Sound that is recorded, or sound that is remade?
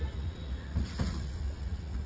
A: remade